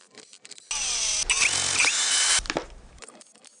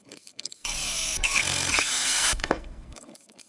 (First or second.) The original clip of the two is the first